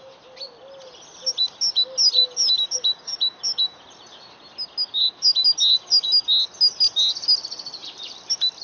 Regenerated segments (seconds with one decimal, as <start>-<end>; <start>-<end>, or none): none